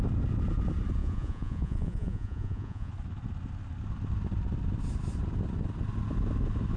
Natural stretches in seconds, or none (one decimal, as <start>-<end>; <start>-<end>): 0.0-1.0; 2.9-6.8